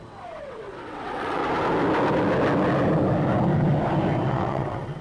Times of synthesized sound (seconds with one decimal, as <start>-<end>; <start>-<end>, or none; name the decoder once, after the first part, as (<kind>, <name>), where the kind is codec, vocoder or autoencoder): 0.0-1.4 (vocoder, WaveNeXt); 4.3-5.0